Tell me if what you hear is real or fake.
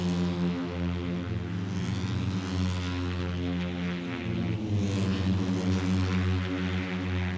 real